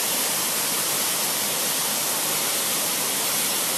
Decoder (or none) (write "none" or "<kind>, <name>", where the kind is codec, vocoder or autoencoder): none